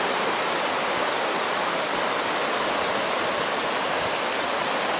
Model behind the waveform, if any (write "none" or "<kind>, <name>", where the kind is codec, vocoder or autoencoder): none